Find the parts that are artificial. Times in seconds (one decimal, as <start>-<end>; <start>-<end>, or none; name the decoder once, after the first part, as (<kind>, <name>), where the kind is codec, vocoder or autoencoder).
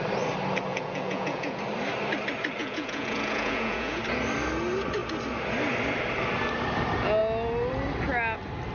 0.7-1.6 (vocoder, Vocos); 2.6-4.0